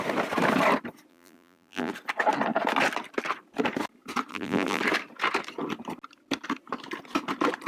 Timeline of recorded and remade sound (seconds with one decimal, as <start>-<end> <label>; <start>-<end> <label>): 0.0-1.1 recorded; 1.1-1.9 remade; 1.9-4.3 recorded; 4.3-4.8 remade; 4.8-7.7 recorded